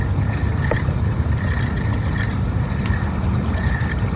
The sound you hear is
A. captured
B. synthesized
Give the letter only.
A